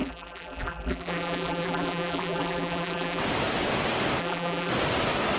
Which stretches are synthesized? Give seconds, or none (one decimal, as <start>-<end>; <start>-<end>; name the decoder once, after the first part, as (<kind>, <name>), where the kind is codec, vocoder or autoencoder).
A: 0.0-3.2 (vocoder, BigVGAN v2); 4.2-4.7